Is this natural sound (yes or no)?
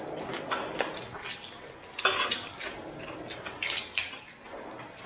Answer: yes